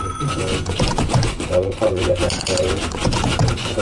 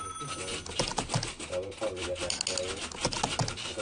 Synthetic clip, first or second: first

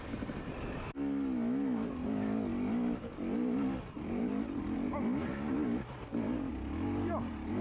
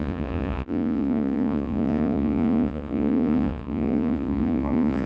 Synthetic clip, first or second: second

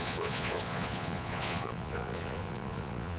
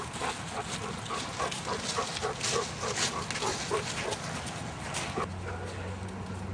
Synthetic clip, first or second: first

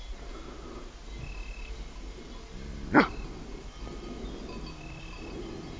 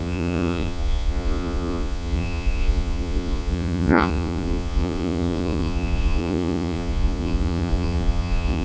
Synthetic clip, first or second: second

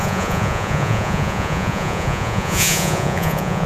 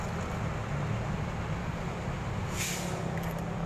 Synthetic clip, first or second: first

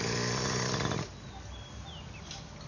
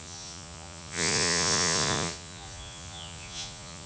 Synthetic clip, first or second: second